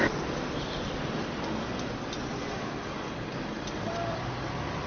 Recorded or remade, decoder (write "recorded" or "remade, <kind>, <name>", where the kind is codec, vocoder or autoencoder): recorded